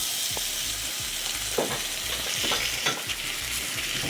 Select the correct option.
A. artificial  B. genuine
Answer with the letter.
B